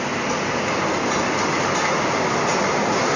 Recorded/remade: recorded